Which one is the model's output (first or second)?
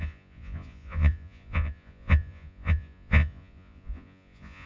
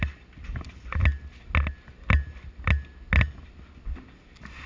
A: first